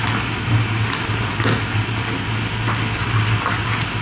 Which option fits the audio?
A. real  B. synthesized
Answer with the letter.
A